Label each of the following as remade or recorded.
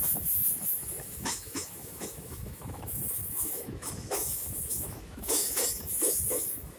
remade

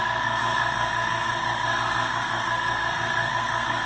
remade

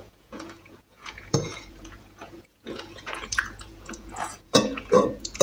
remade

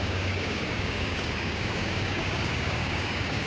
remade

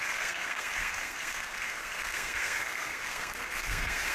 remade